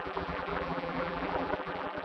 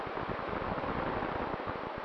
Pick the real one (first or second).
second